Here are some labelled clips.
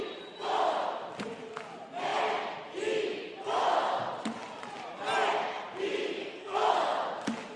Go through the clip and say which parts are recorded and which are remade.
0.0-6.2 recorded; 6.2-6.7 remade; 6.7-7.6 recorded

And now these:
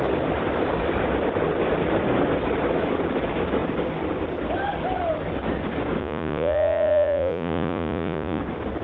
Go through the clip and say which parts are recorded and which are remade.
0.0-6.0 recorded; 6.0-8.4 remade; 8.4-8.8 recorded

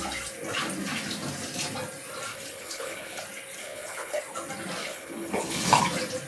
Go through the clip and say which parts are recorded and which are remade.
0.0-2.3 recorded; 2.3-3.2 remade; 3.2-3.6 recorded; 3.6-4.2 remade; 4.2-4.8 recorded; 4.8-5.8 remade; 5.8-6.3 recorded

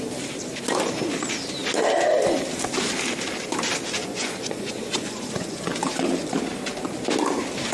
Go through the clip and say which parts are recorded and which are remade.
0.0-4.0 recorded; 4.0-6.2 remade; 6.2-7.7 recorded

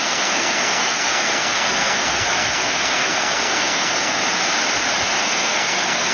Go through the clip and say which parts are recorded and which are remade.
0.0-4.2 remade; 4.2-5.2 recorded; 5.2-6.1 remade

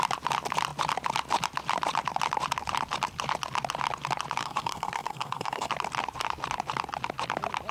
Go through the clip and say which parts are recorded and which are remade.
0.0-4.4 recorded; 4.4-5.7 remade; 5.7-7.7 recorded

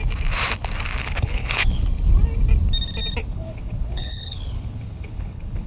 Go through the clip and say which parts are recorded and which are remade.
0.0-1.0 recorded; 1.0-1.8 remade; 1.8-3.2 recorded; 3.2-5.7 remade

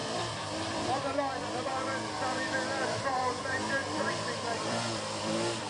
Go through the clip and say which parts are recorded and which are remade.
0.0-3.4 remade; 3.4-3.8 recorded; 3.8-5.7 remade